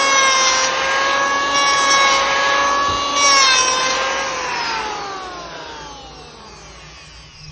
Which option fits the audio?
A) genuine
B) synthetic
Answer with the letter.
A